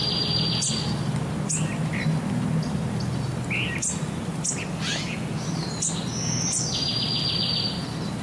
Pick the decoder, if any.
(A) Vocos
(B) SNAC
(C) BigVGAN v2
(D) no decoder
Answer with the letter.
D